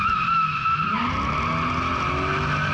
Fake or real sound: real